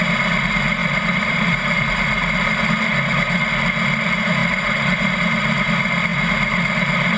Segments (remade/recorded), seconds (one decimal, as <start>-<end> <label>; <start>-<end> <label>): 0.0-0.8 recorded; 0.8-2.7 remade; 2.7-4.4 recorded; 4.4-5.1 remade; 5.1-7.2 recorded